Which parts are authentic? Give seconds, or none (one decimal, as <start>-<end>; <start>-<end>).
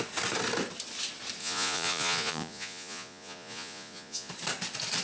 0.0-1.4; 4.3-5.0